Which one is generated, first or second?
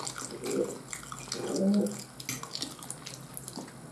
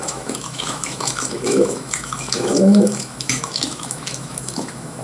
second